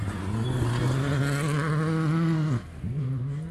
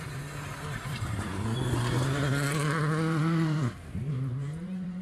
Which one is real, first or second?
first